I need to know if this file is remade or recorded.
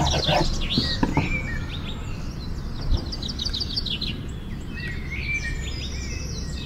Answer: recorded